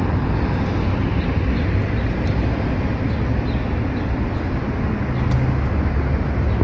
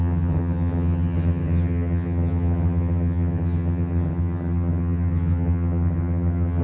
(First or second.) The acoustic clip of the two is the first